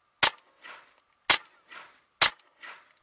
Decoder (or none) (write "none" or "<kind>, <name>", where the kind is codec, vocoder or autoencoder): none